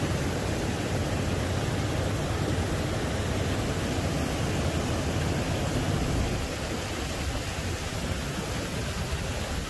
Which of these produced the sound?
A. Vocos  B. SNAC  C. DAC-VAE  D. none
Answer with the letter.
D